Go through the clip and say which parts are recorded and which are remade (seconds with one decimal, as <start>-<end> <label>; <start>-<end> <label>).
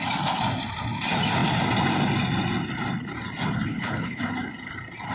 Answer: 0.0-3.7 recorded; 3.7-4.2 remade; 4.2-5.1 recorded